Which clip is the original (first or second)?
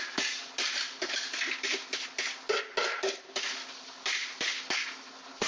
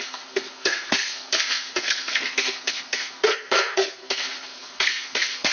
first